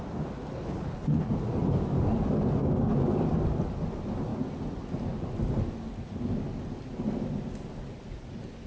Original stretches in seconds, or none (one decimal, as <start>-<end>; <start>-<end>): 0.0-0.5; 1.3-8.7